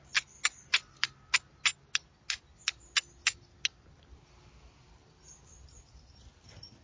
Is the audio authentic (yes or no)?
yes